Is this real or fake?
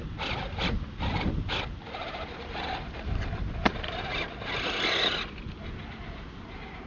real